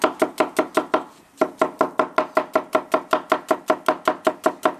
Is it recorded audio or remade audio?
recorded